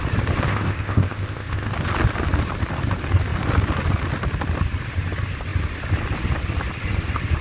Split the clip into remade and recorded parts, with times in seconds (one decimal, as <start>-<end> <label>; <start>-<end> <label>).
0.0-0.5 recorded; 0.5-1.7 remade; 1.7-7.4 recorded